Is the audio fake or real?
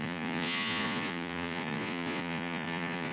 fake